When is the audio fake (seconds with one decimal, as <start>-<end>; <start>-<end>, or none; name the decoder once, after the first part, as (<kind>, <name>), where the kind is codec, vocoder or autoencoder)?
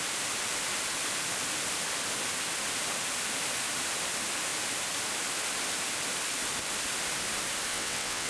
7.7-8.3 (vocoder, WaveNeXt)